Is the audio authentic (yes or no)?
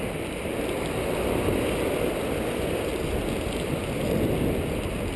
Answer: yes